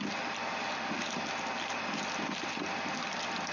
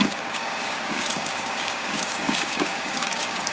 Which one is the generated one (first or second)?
second